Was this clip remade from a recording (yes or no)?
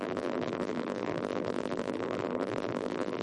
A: yes